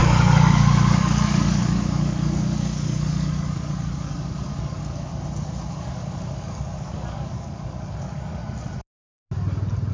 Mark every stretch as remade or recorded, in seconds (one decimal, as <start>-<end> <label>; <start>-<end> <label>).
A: 0.0-5.1 remade; 5.1-5.7 recorded; 5.7-8.4 remade; 8.4-9.9 recorded